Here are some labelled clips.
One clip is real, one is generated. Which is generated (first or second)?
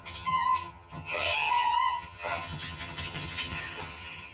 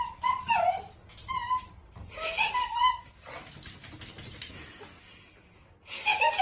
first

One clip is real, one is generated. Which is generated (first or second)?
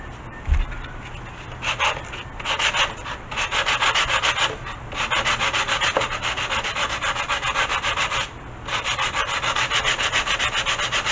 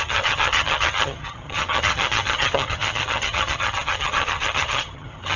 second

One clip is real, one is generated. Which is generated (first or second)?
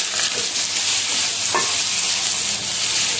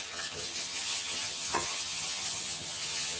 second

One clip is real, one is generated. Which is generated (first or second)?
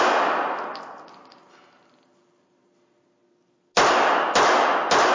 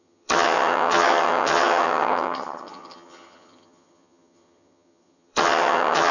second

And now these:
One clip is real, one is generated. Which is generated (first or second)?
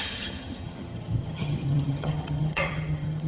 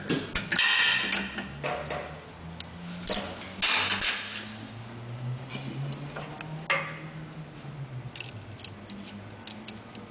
first